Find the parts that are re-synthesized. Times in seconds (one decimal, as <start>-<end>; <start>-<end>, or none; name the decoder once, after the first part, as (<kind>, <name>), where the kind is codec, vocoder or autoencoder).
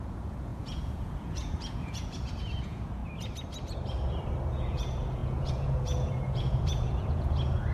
0.0-3.0 (vocoder, Vocos); 4.5-7.7